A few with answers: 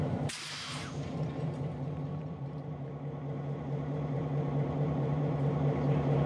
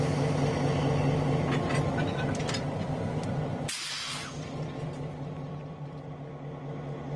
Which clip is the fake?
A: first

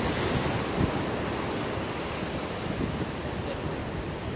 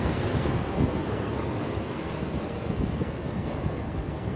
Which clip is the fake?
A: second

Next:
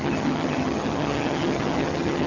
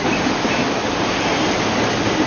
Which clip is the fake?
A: first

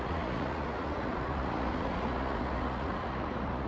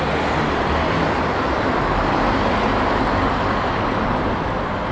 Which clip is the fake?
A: first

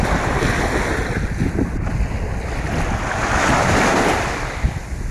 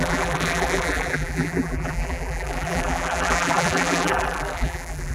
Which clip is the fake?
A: second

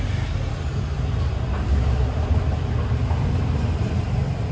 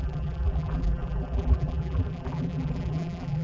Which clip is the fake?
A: second